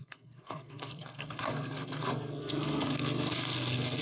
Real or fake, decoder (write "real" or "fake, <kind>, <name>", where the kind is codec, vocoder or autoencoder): fake, codec, SNAC